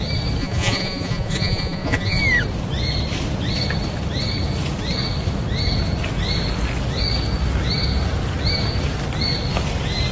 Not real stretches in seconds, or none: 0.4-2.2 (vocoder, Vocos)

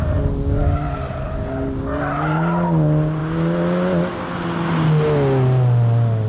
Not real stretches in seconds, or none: none

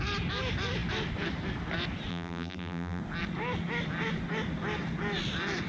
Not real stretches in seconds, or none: 2.1-3.0 (vocoder, BigVGAN v2)